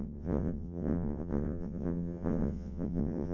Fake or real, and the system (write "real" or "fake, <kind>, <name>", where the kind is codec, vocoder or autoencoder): fake, vocoder, WaveNeXt